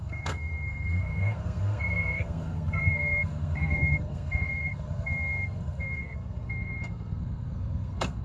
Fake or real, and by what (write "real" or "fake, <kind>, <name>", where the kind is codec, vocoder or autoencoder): fake, codec, SNAC